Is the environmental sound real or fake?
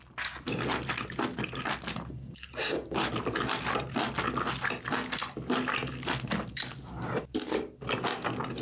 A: real